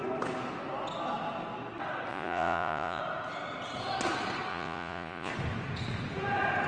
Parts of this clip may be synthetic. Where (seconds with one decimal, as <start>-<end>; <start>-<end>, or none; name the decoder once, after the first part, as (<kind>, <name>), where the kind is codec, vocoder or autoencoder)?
2.1-3.0 (vocoder, Vocos); 4.5-5.3